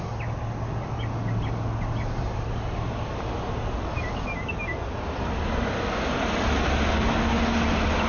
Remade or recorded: recorded